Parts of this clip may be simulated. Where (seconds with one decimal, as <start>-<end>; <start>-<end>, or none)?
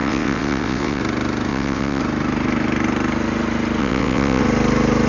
0.0-1.0; 1.5-2.0; 3.8-4.4